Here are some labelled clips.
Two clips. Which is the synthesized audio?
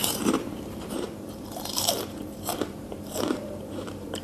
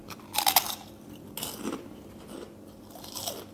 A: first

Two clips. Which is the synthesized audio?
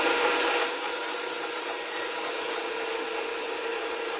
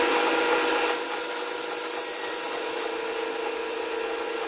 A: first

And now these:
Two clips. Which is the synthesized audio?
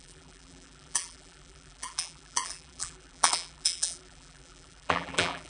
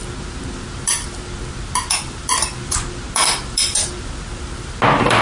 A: first